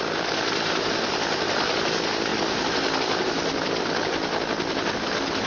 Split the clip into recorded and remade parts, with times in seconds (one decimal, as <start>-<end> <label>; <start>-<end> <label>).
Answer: 0.0-5.5 recorded